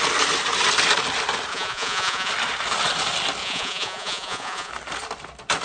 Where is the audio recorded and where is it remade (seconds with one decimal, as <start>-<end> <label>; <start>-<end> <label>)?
0.0-1.5 recorded; 1.5-2.3 remade; 2.3-3.4 recorded; 3.4-4.7 remade; 4.7-5.6 recorded